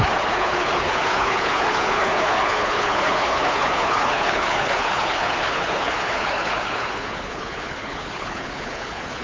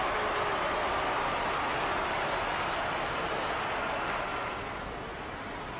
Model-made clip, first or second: first